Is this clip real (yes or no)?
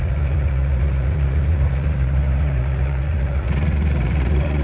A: no